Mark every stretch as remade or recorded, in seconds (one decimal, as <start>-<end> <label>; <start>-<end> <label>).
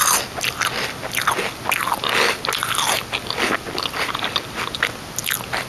0.0-5.7 recorded